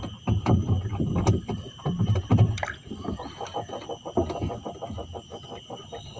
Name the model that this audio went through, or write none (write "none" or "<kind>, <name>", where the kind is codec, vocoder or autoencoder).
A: none